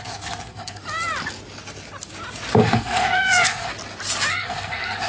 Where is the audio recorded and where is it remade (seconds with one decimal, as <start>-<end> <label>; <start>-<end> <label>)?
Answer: 0.0-0.8 remade; 0.8-2.6 recorded; 2.6-3.7 remade; 3.7-4.3 recorded; 4.3-5.1 remade